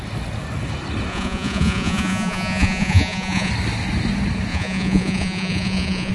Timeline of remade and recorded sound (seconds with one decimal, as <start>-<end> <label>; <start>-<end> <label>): 0.0-1.1 recorded; 1.1-3.5 remade; 3.5-4.5 recorded; 4.5-6.1 remade